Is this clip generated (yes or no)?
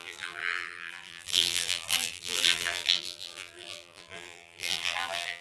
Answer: yes